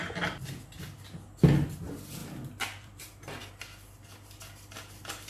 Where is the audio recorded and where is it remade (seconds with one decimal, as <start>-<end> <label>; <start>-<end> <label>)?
0.0-2.2 recorded; 2.2-3.5 remade; 3.5-5.3 recorded